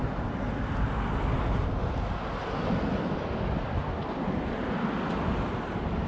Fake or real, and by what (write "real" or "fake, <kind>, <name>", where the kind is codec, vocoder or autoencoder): real